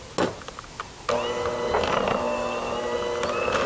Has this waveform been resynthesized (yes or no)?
no